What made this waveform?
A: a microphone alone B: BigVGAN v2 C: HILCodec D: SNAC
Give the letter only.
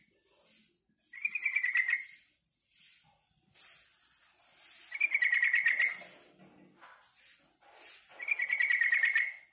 A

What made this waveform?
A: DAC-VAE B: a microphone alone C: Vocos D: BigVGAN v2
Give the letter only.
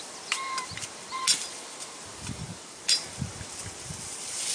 B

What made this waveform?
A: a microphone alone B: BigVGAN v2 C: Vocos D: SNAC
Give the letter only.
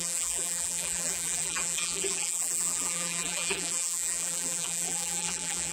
B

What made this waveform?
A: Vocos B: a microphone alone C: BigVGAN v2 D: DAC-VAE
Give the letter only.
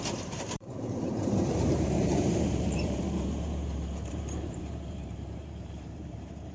C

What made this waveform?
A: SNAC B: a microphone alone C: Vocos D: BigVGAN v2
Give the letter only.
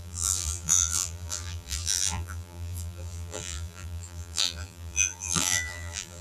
D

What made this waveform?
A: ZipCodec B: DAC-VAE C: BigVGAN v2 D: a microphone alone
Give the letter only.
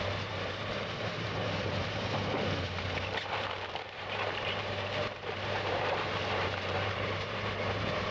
C